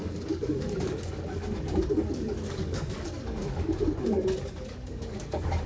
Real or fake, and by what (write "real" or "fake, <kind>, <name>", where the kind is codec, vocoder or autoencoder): fake, codec, DAC